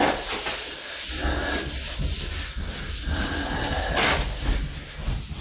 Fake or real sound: real